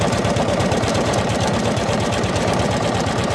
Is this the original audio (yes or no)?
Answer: no